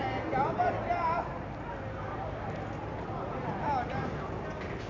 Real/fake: real